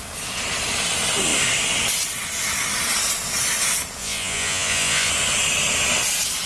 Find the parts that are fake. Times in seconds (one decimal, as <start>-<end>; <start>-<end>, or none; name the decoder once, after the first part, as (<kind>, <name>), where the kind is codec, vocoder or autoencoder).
4.0-5.1 (vocoder, Vocos)